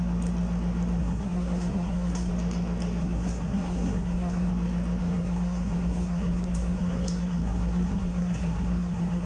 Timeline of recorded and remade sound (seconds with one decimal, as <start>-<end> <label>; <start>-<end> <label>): 0.0-1.0 recorded; 1.0-2.3 remade; 2.3-3.0 recorded; 3.0-4.5 remade; 4.5-5.0 recorded; 5.0-9.3 remade